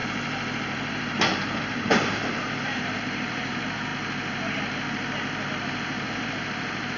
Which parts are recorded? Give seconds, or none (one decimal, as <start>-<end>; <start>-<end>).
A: 3.9-5.5